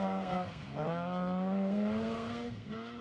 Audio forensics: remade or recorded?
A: remade